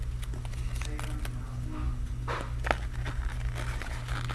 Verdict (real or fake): real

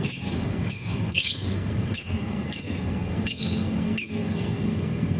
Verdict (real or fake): fake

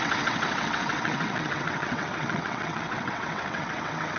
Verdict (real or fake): fake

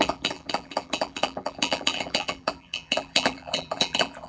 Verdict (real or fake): fake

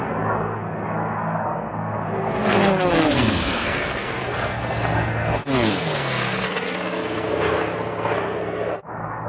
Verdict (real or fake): fake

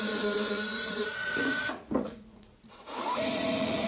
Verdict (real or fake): fake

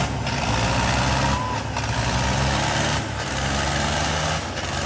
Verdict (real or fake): real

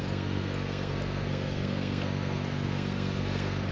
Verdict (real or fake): fake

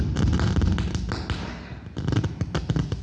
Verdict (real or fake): real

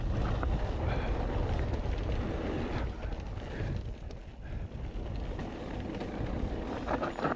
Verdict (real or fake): real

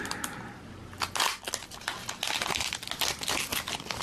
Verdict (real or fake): real